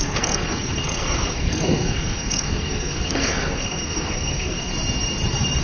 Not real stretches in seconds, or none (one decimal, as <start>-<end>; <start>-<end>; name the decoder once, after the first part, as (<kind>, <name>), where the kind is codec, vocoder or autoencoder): 0.0-4.7 (codec, SNAC)